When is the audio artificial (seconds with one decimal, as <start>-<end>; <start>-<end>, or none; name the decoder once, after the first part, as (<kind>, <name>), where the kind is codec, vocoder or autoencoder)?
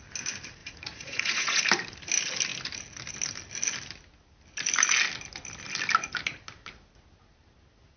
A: 0.6-1.6 (vocoder, Vocos)